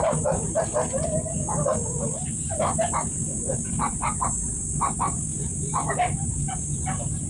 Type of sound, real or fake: real